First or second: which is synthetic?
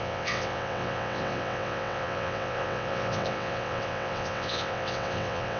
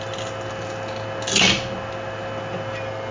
first